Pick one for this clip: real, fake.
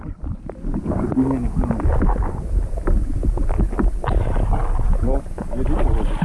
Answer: real